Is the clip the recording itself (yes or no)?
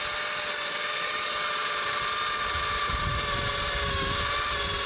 yes